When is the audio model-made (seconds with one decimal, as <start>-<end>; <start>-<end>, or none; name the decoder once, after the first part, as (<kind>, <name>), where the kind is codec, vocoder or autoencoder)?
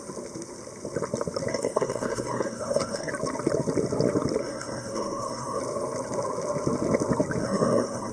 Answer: 1.5-3.1 (codec, SNAC); 4.4-5.6; 7.4-8.1